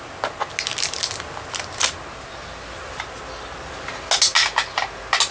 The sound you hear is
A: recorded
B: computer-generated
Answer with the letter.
A